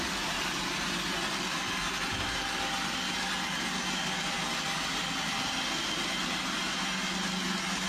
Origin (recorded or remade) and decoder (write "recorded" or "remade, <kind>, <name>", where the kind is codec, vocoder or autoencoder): recorded